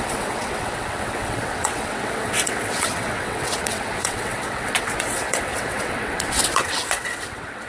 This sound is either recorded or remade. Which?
remade